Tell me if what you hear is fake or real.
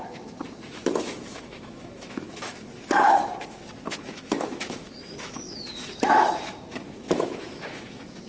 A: fake